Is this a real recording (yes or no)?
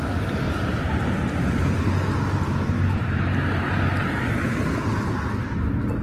yes